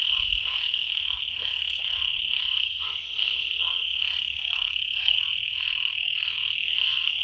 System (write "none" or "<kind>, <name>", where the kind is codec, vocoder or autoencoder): codec, SNAC